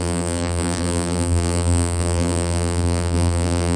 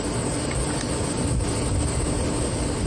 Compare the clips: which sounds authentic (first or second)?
second